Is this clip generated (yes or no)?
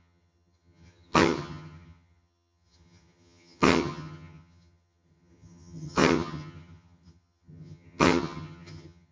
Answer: yes